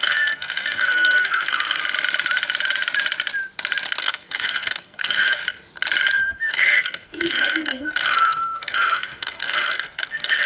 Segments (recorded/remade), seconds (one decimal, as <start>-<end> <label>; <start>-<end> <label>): 0.0-1.8 remade; 1.8-4.0 recorded; 4.0-5.4 remade; 5.4-6.1 recorded; 6.1-10.5 remade